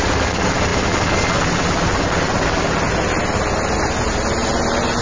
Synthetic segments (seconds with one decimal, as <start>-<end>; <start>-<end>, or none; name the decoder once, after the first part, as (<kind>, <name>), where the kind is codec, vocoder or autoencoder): none